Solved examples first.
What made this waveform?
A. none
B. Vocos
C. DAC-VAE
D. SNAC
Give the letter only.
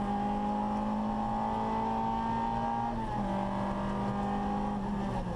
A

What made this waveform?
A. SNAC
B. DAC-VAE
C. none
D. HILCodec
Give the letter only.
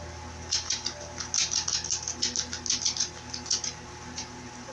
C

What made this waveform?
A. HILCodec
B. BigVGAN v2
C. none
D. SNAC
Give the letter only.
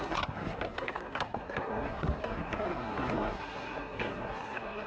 D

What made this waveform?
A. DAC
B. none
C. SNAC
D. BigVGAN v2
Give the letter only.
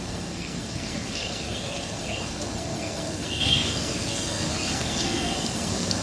C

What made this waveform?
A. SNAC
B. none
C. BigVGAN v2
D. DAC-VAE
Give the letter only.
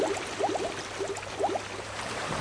B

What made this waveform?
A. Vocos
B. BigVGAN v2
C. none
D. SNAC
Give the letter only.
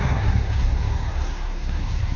D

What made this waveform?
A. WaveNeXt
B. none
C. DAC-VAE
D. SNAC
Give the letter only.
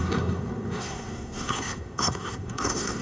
D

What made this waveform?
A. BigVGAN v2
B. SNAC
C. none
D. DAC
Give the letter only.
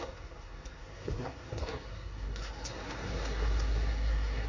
B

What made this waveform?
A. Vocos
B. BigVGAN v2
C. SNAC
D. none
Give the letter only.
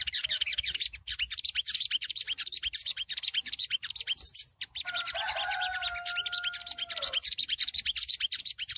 D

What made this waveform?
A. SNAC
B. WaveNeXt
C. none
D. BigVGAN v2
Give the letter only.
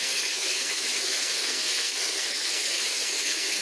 A